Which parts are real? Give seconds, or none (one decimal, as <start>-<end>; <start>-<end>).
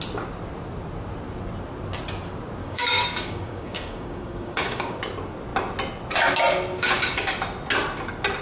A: 0.0-2.6; 5.0-6.7; 7.3-8.4